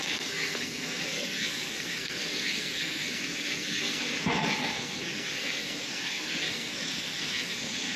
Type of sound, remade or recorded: remade